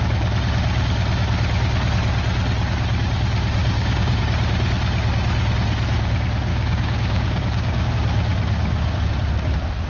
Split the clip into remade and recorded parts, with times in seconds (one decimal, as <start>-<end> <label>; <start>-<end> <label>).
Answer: 0.0-3.6 recorded; 3.6-4.2 remade; 4.2-6.5 recorded; 6.5-7.9 remade; 7.9-9.9 recorded